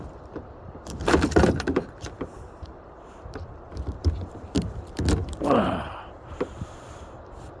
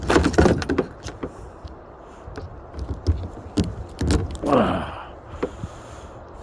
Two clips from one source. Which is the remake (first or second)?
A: first